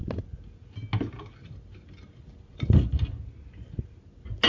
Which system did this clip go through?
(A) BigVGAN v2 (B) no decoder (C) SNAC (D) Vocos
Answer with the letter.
B